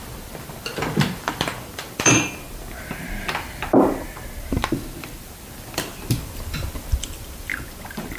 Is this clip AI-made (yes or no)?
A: yes